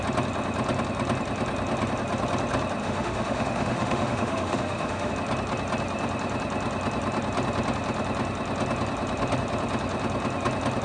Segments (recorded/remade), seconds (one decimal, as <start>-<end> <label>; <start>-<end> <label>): 0.0-2.8 recorded; 2.8-5.1 remade; 5.1-10.8 recorded